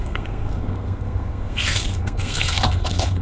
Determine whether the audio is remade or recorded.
remade